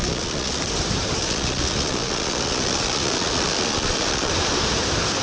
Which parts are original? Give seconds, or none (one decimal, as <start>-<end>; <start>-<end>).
0.6-1.2; 4.3-5.2

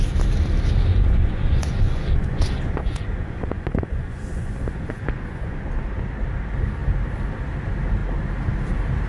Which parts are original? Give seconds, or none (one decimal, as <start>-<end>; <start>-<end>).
0.0-0.9; 5.7-9.1

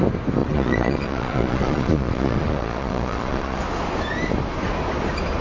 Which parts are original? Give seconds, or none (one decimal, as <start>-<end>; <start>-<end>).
0.0-0.4; 3.6-5.4

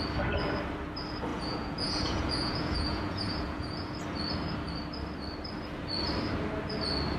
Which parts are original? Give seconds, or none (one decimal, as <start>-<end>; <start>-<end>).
0.0-1.3; 4.0-7.2

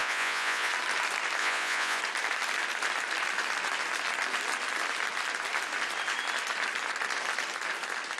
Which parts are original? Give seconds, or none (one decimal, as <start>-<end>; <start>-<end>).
0.7-1.4; 2.0-8.2

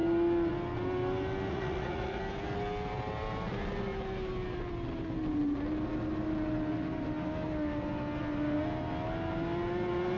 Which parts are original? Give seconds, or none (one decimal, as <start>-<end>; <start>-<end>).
0.0-1.5; 2.2-10.2